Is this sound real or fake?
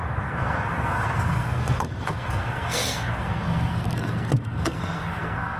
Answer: fake